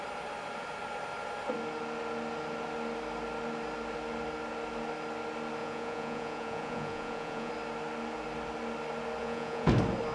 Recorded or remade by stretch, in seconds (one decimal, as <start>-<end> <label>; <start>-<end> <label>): 0.0-5.6 recorded; 5.6-7.5 remade; 7.5-9.2 recorded; 9.2-9.7 remade; 9.7-10.1 recorded